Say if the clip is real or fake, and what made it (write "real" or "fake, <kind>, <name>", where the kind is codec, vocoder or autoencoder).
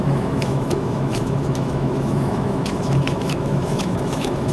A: fake, autoencoder, DAC-VAE